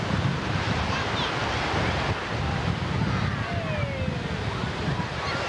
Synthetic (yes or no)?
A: no